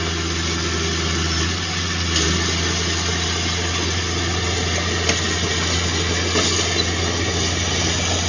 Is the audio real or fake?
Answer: real